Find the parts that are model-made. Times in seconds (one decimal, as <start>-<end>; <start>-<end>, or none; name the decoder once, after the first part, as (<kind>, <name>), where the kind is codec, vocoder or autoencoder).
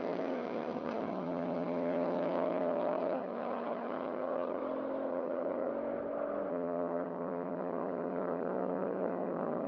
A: 0.0-4.6 (vocoder, HiFi-GAN); 5.1-5.7; 6.5-9.7